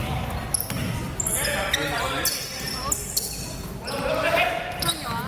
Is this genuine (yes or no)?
yes